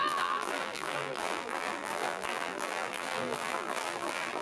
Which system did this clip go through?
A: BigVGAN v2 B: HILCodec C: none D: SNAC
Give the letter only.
A